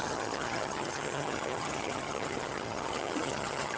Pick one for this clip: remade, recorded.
remade